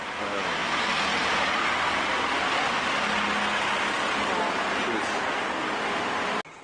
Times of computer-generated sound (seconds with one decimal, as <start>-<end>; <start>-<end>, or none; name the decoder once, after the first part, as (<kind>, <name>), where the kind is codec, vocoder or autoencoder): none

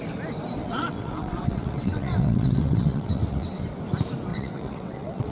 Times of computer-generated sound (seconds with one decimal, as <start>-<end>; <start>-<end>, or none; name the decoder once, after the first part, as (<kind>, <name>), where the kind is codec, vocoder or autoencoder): 0.6-3.6 (vocoder, WaveNeXt); 4.3-5.3

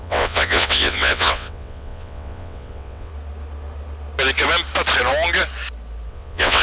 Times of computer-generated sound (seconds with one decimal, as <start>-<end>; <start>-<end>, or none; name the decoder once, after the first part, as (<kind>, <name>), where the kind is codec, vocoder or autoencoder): 0.0-3.1 (vocoder, WaveNeXt); 6.1-6.6